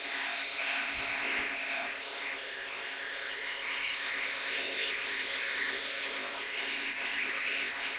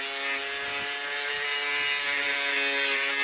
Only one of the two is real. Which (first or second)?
second